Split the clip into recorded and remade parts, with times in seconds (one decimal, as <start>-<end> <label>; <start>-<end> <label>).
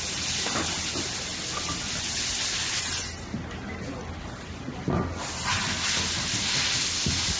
0.0-7.4 recorded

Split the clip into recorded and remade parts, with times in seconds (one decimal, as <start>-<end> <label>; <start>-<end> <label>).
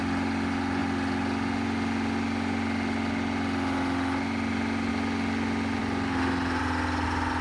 0.0-7.4 recorded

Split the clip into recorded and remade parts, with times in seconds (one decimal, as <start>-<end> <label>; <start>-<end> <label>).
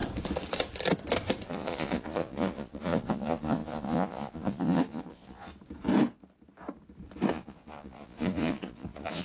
0.0-1.5 recorded; 1.5-5.5 remade; 5.5-7.3 recorded; 7.3-9.2 remade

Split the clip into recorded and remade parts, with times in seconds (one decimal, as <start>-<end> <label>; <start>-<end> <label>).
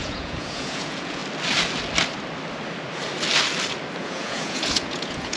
0.0-1.2 remade; 1.2-4.0 recorded; 4.0-5.4 remade